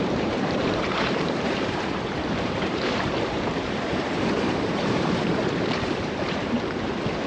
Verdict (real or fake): fake